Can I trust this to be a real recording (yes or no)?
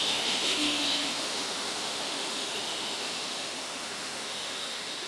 no